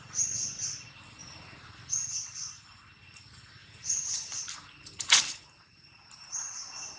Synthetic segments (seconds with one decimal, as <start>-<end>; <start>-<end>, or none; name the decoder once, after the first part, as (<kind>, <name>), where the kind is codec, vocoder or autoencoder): 1.2-1.9 (vocoder, BigVGAN v2); 3.6-6.3